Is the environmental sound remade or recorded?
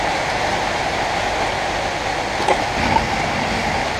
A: recorded